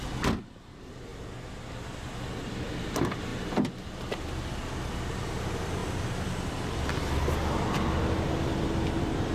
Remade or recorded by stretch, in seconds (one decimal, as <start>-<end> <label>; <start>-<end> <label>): 0.0-1.1 remade; 1.1-1.7 recorded; 1.7-9.3 remade